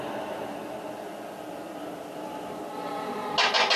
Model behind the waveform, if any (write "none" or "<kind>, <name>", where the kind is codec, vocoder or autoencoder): none